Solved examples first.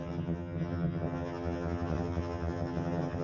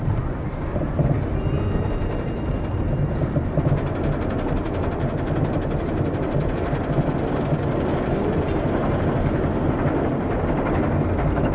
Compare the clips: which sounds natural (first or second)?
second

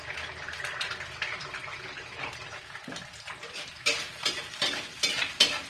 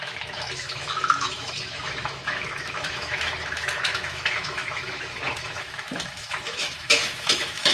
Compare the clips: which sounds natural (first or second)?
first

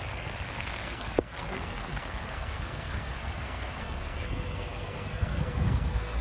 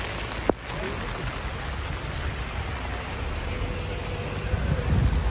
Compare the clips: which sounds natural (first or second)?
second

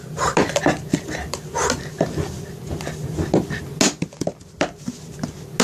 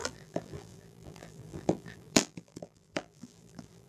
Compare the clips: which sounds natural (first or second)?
first